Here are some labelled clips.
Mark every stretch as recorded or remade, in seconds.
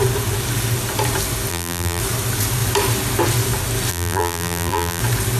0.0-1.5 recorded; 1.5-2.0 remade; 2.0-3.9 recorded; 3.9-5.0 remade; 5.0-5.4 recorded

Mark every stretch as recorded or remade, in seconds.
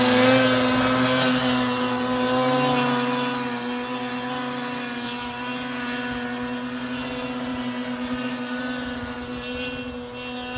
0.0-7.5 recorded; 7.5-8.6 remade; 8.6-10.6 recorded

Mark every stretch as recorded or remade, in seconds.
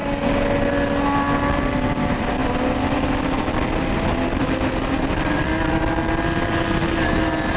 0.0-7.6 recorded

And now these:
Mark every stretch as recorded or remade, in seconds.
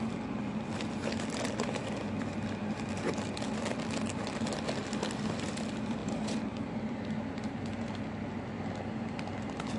0.0-9.8 recorded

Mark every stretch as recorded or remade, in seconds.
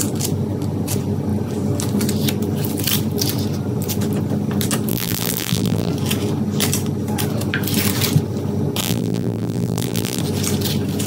0.0-4.9 recorded; 4.9-5.9 remade; 5.9-8.8 recorded; 8.8-10.2 remade; 10.2-11.1 recorded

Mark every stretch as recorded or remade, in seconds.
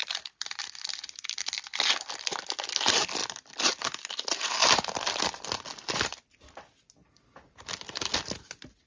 0.0-1.6 remade; 1.6-3.2 recorded; 3.2-3.8 remade; 3.8-8.9 recorded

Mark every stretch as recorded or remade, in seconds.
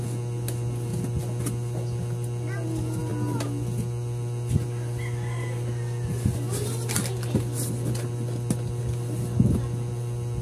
0.0-10.4 recorded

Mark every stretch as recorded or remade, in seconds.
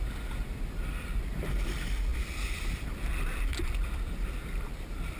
0.0-2.1 recorded; 2.1-2.7 remade; 2.7-3.5 recorded; 3.5-4.1 remade; 4.1-5.2 recorded